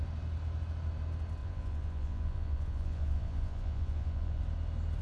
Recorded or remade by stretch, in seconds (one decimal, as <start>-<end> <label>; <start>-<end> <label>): 0.0-1.4 recorded; 1.4-4.4 remade; 4.4-5.0 recorded